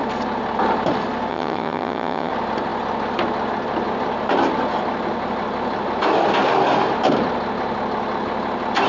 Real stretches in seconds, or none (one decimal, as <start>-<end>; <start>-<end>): 0.0-1.3; 2.3-8.9